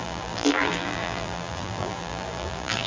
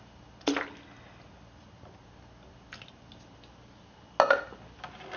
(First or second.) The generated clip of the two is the first